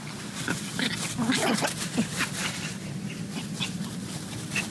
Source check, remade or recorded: recorded